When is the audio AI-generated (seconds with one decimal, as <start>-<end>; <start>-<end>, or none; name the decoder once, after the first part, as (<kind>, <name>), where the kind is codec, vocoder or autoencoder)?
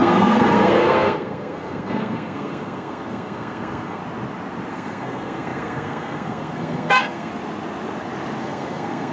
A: 0.0-4.0 (codec, SNAC); 4.7-7.3; 8.4-9.1